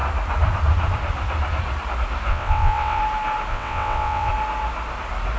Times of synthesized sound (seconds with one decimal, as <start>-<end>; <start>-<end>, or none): 2.3-3.0; 3.5-4.3